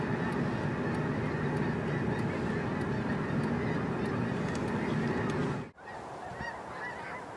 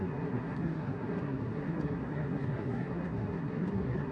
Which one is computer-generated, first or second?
second